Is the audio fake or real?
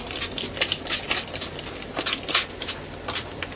real